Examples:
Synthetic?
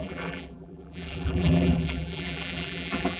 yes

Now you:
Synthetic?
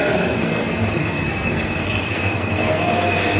yes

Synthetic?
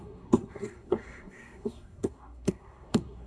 yes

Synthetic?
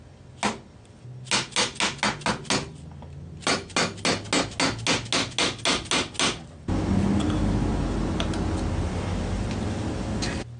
no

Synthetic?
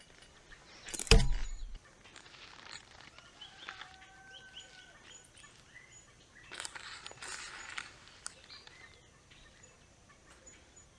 no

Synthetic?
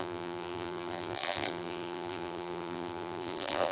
yes